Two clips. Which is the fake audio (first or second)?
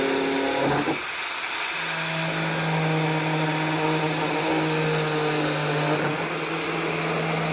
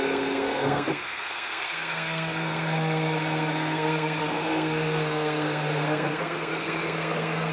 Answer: second